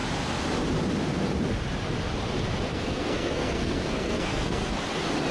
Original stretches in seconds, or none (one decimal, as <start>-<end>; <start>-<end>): 0.0-2.7; 4.8-5.3